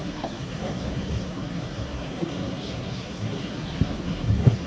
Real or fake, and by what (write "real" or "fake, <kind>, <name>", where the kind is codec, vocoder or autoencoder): fake, codec, SNAC